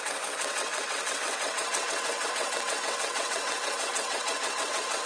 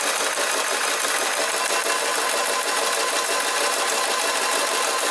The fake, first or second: first